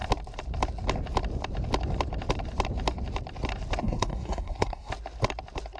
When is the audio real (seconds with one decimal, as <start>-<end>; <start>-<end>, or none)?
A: 0.0-3.8; 4.9-5.8